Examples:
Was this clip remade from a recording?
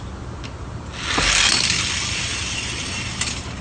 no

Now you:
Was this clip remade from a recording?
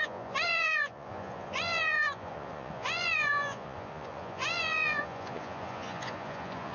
yes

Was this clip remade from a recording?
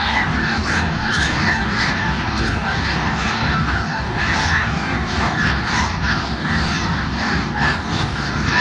yes